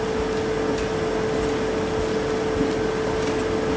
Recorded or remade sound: recorded